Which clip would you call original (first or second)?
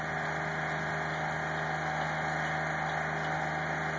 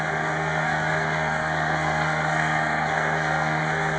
first